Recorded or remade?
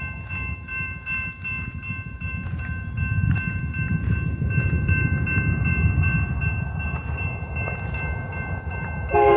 remade